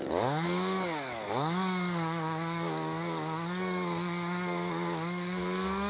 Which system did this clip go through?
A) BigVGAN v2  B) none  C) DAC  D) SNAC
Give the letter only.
C